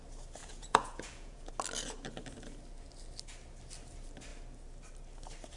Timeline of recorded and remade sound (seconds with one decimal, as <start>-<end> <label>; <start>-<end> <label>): 0.0-0.4 recorded; 0.4-1.5 remade; 1.5-5.6 recorded